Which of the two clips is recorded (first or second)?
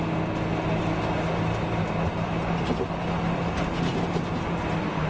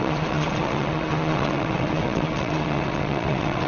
first